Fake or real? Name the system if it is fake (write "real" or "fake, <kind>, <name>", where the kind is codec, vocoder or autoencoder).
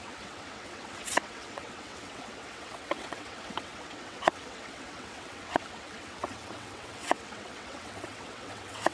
fake, vocoder, WaveNeXt